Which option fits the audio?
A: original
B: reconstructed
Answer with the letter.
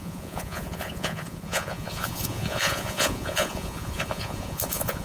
B